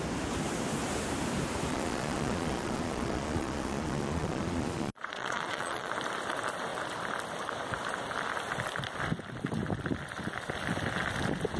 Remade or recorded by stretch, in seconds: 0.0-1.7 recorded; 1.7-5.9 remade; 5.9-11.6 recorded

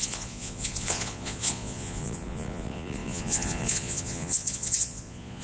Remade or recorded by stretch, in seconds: 0.0-5.4 remade